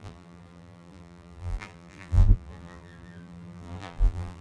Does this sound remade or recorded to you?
remade